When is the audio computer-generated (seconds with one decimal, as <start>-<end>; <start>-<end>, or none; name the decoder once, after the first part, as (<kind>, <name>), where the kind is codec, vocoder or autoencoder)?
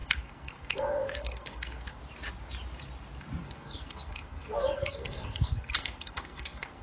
0.0-2.0 (codec, SNAC); 3.4-6.8